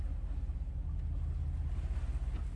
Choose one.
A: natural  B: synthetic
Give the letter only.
A